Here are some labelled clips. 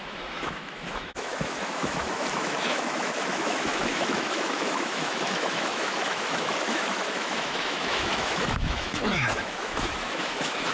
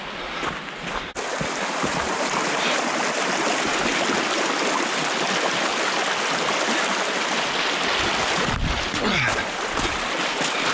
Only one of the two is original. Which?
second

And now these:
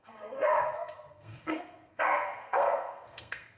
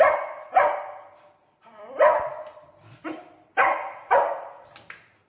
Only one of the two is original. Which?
second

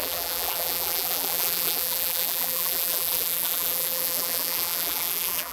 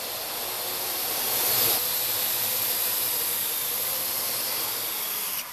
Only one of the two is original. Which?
second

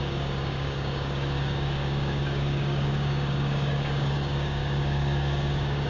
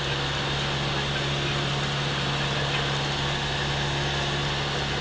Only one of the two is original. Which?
second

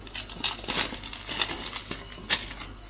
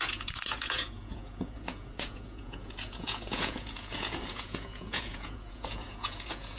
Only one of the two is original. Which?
first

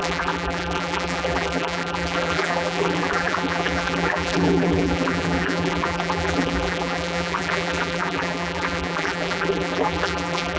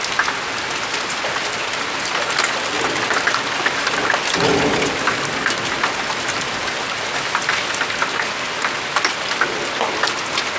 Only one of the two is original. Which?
second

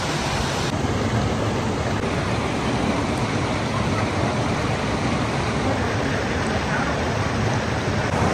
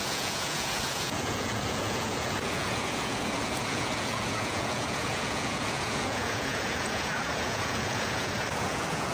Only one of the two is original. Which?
first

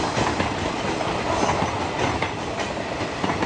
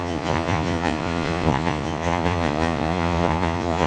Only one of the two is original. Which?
first